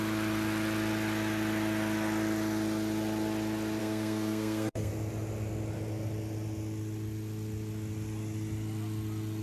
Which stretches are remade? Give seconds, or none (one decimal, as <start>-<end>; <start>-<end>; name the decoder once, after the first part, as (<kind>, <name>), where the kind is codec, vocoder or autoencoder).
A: 3.8-4.9 (codec, SNAC)